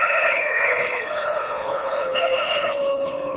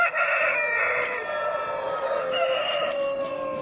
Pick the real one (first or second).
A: second